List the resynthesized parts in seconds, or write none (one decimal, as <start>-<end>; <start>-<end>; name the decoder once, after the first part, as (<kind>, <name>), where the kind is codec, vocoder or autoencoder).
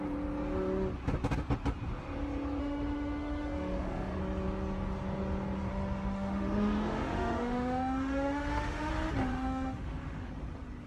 2.6-4.2 (autoencoder, DAC-VAE); 5.7-8.9; 9.3-10.3